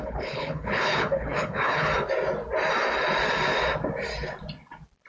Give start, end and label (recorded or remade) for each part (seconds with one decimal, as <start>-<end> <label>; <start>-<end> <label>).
0.0-1.9 remade; 1.9-5.1 recorded